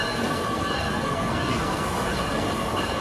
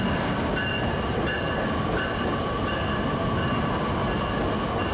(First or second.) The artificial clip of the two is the first